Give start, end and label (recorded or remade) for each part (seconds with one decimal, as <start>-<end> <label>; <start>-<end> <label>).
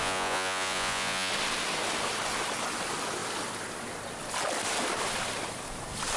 0.0-1.3 remade; 1.3-6.2 recorded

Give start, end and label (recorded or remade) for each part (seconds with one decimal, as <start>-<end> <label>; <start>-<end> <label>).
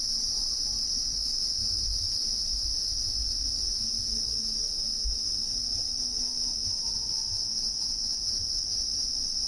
0.0-7.5 recorded; 7.5-8.5 remade; 8.5-9.5 recorded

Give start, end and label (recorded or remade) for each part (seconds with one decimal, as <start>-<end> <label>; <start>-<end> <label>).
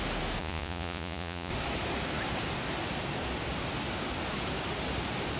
0.0-0.4 recorded; 0.4-1.5 remade; 1.5-5.4 recorded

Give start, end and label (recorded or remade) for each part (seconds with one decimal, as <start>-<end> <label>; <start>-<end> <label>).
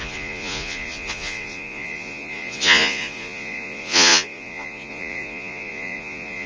0.0-6.5 remade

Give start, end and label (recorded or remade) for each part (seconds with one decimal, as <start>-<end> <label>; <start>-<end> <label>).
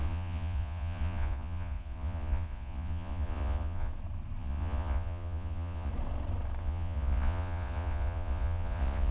0.0-3.9 remade; 3.9-4.4 recorded; 4.4-5.9 remade; 5.9-6.6 recorded; 6.6-9.1 remade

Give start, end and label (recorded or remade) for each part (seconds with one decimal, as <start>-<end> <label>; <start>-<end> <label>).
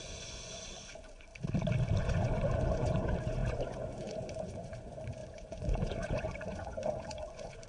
0.0-1.3 remade; 1.3-2.0 recorded; 2.0-7.7 remade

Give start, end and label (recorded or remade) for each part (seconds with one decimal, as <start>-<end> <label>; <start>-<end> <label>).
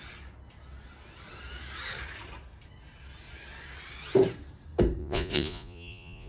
0.0-5.0 recorded; 5.0-6.3 remade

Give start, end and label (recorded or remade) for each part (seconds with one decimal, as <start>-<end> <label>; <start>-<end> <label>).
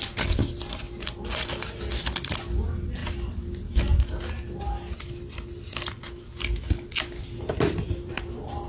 0.0-8.7 recorded